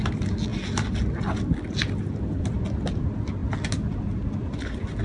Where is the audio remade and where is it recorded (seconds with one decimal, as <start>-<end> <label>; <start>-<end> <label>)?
0.0-5.0 recorded

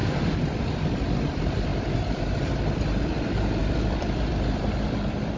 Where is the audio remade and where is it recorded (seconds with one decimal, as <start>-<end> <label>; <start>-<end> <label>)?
0.0-5.4 remade

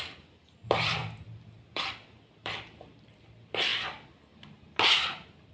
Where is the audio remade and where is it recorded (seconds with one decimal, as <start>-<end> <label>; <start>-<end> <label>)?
0.0-1.0 remade; 1.0-1.6 recorded; 1.6-3.7 remade; 3.7-4.8 recorded; 4.8-5.5 remade

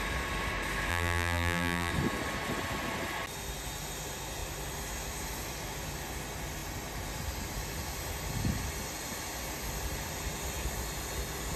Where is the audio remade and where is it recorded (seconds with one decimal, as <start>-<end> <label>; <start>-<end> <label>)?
0.0-0.9 recorded; 0.9-1.9 remade; 1.9-11.6 recorded